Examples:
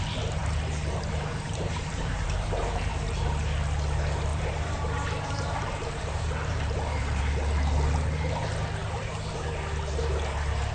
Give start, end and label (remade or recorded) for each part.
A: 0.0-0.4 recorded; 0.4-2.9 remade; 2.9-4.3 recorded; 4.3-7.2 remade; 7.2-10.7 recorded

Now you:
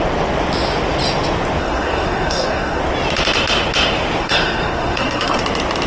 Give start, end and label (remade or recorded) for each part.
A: 0.0-1.6 recorded; 1.6-2.8 remade; 2.8-4.2 recorded; 4.2-5.4 remade; 5.4-5.9 recorded

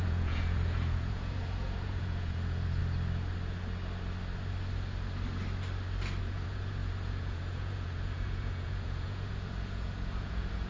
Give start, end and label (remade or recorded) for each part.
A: 0.0-2.8 remade; 2.8-6.2 recorded; 6.2-10.7 remade